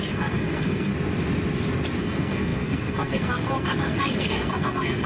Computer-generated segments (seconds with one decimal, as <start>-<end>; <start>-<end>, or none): 0.0-0.9; 2.0-5.1